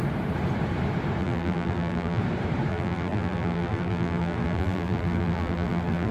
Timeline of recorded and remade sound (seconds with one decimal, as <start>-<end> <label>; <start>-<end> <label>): 0.0-1.2 recorded; 1.2-2.2 remade; 2.2-2.7 recorded; 2.7-6.1 remade